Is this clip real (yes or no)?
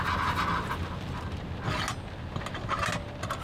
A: yes